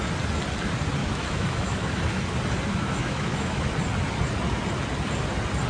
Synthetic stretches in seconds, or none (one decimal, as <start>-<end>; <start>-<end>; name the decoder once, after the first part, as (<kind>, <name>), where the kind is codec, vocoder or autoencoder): 1.0-2.2 (autoencoder, DAC-VAE); 2.7-3.7